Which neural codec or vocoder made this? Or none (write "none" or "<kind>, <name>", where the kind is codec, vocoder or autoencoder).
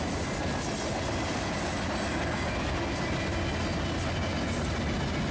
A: none